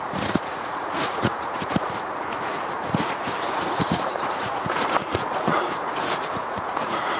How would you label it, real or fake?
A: fake